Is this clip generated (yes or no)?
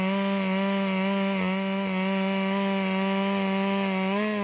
no